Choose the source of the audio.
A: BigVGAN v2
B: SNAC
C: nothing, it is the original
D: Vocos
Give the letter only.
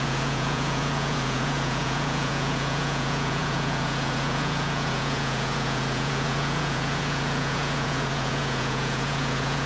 D